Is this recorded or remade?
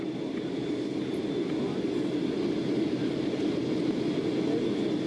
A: recorded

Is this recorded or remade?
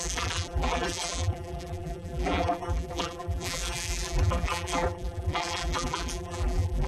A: remade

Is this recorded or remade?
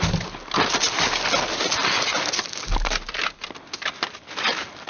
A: recorded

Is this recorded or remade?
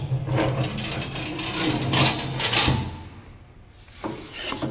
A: recorded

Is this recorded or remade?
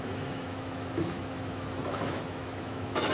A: remade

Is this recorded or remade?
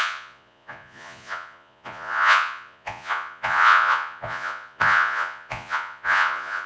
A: remade